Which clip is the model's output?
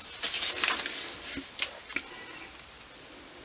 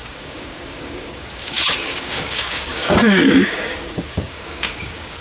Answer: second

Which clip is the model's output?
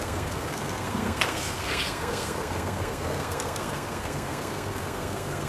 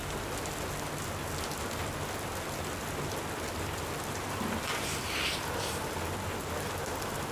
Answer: first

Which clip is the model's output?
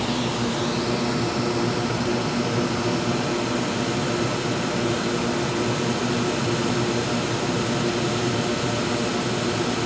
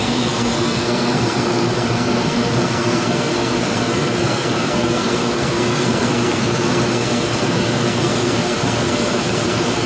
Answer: second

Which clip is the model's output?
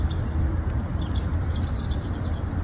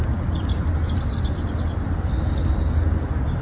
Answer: first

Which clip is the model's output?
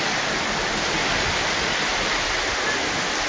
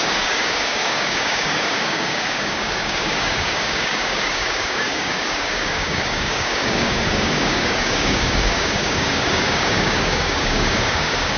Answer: second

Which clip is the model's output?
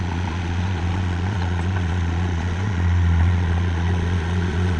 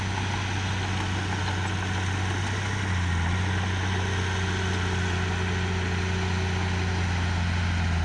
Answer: first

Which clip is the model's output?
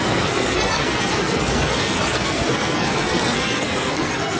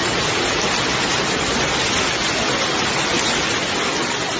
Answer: first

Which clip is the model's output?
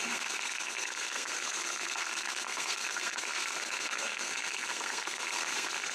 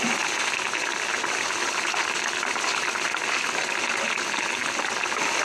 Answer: first